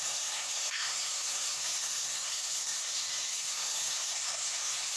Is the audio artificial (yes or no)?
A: yes